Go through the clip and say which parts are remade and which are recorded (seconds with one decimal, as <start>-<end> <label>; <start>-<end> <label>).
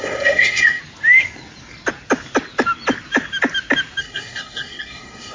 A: 0.0-0.8 remade; 0.8-4.0 recorded; 4.0-5.3 remade